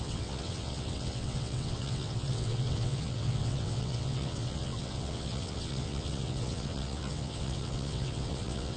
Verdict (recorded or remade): remade